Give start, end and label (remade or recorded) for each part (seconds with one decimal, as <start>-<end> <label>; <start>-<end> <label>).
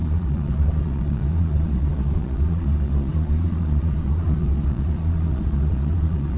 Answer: 0.0-6.4 remade